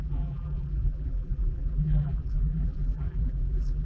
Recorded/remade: remade